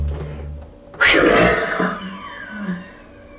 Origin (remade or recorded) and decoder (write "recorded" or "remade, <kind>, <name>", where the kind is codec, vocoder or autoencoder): recorded